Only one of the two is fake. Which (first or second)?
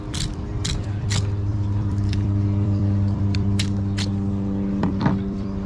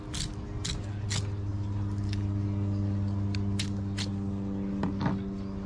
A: first